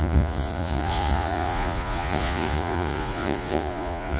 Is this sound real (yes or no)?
no